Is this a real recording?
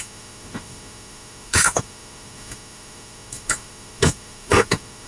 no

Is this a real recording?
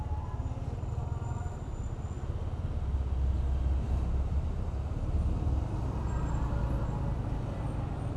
yes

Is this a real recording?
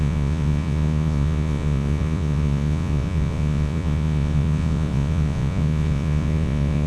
no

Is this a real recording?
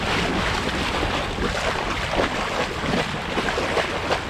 yes